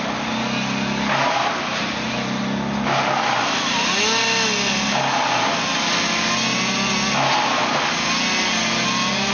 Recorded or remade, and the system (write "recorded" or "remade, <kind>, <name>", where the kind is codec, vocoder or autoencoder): recorded